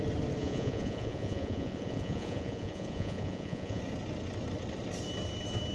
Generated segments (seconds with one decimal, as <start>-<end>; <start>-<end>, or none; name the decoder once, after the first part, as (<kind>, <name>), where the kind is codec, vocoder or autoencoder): 0.4-3.8 (vocoder, Vocos)